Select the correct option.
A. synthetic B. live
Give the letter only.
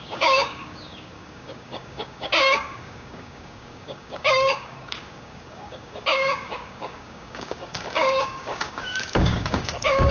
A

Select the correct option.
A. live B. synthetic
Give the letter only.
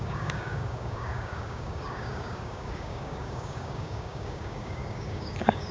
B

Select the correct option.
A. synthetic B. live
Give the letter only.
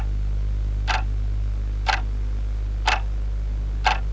B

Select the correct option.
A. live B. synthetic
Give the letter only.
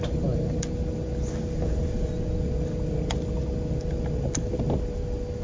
A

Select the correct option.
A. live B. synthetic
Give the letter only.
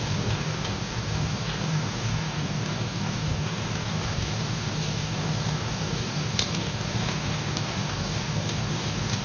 B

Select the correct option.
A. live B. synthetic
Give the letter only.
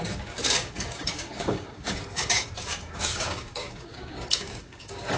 B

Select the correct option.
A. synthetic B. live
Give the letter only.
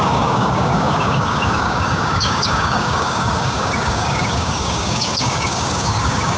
A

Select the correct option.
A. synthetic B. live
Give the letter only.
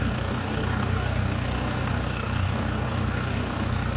A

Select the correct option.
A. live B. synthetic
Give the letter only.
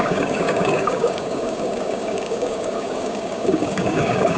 B